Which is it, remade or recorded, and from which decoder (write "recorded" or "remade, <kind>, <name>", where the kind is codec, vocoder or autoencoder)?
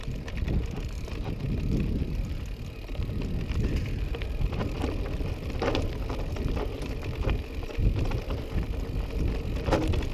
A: recorded